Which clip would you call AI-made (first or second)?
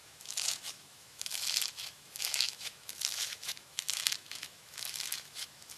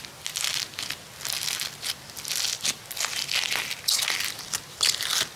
first